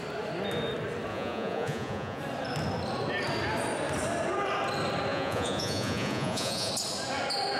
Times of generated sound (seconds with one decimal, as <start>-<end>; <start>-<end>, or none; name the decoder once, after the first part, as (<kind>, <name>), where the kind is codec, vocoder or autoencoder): 1.1-2.2 (vocoder, Vocos); 5.1-6.7